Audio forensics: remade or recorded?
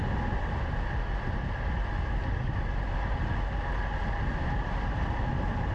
recorded